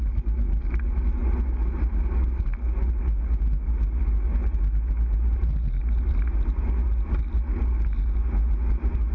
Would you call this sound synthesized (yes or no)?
no